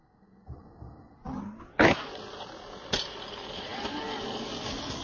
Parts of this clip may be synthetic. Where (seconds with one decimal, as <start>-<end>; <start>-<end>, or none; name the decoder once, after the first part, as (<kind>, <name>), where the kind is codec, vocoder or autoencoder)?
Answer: none